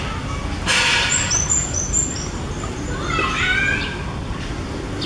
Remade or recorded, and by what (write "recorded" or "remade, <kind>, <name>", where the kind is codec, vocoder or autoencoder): recorded